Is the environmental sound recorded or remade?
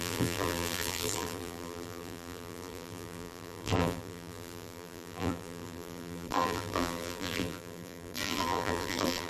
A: remade